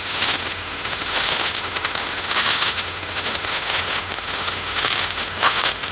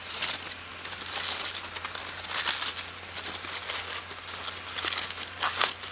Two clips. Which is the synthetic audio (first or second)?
first